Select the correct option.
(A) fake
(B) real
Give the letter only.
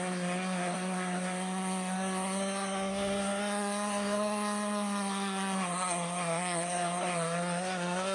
A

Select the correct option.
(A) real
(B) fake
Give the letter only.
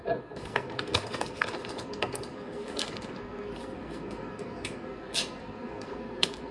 B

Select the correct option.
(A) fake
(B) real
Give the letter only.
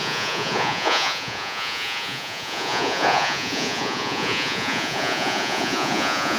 A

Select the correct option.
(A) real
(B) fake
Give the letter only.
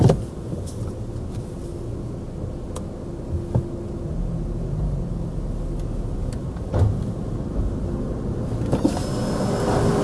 A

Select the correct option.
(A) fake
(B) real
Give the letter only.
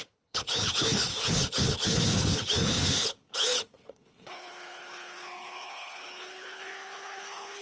A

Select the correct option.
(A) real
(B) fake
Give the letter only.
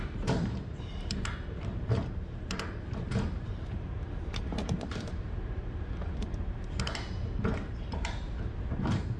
B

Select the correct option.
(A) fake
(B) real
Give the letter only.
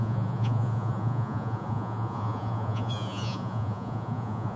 A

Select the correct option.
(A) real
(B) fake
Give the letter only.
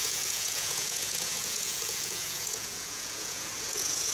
B